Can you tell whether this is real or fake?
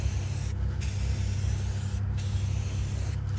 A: real